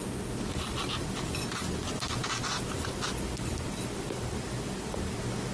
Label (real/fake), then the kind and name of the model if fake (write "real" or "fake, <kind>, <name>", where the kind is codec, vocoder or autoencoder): fake, vocoder, BigVGAN v2